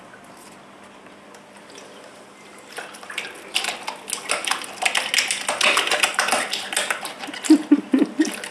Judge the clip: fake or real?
real